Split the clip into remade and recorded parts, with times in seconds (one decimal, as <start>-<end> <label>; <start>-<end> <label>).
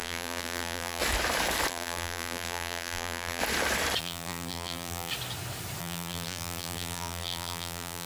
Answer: 0.0-1.0 remade; 1.0-1.7 recorded; 1.7-3.4 remade; 3.4-4.0 recorded; 4.0-5.1 remade; 5.1-5.8 recorded; 5.8-8.1 remade